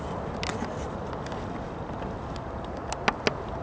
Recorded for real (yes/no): yes